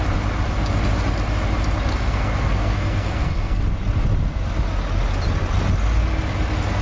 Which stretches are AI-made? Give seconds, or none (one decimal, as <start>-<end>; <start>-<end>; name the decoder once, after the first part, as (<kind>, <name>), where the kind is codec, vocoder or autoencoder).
1.9-3.6 (codec, SNAC)